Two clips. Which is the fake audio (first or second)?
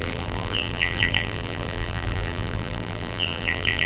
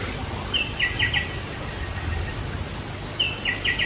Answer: first